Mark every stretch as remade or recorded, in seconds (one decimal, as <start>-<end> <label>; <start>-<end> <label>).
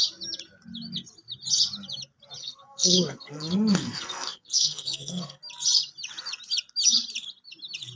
0.0-2.4 recorded; 2.4-5.4 remade; 5.4-8.0 recorded